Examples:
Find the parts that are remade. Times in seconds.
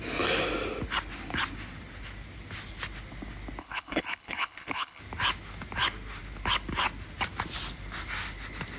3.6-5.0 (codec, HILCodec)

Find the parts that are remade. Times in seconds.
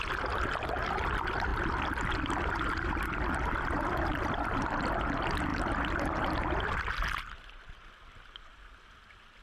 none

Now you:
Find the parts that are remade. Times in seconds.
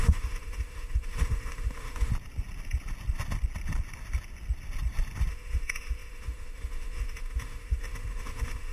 0.0-2.1 (autoencoder, DAC-VAE); 5.3-8.7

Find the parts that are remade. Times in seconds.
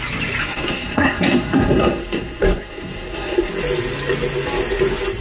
0.4-3.5 (codec, SNAC)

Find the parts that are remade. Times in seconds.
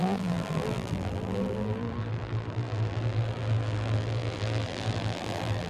0.0-5.7 (vocoder, BigVGAN v2)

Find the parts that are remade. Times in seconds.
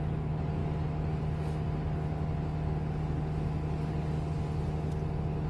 none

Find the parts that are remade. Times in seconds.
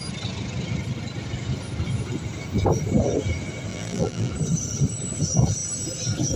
3.7-4.3 (vocoder, BigVGAN v2)